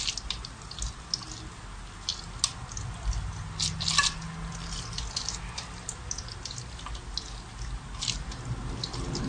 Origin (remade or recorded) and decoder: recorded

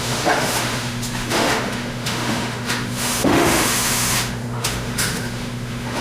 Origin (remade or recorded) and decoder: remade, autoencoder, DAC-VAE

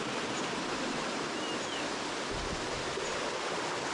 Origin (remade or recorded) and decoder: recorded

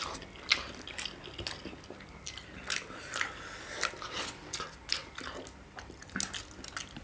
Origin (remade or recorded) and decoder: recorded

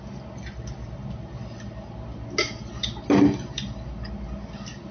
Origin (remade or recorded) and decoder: recorded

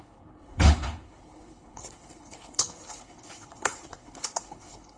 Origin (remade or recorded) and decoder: remade, codec, HILCodec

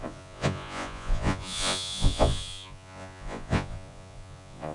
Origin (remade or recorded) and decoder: remade, vocoder, Vocos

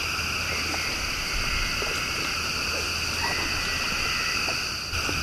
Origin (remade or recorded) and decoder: recorded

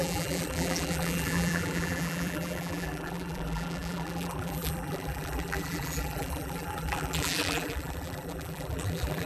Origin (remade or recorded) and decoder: remade, vocoder, BigVGAN v2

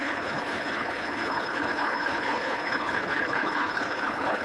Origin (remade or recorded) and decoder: remade, codec, HILCodec